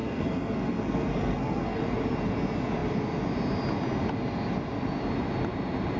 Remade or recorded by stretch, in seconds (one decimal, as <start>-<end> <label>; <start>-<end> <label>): 0.0-1.8 remade; 1.8-6.0 recorded